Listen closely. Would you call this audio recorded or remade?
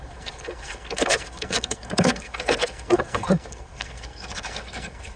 remade